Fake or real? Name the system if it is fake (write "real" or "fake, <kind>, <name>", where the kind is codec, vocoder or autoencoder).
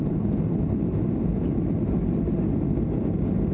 real